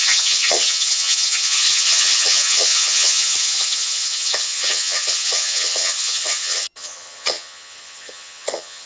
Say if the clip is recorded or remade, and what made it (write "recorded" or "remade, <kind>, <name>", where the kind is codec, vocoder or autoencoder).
remade, vocoder, HiFi-GAN